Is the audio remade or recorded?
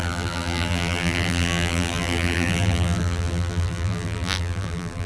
remade